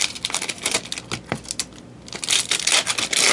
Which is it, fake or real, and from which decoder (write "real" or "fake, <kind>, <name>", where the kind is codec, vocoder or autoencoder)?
real